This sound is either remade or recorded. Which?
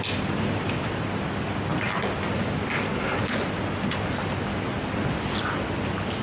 recorded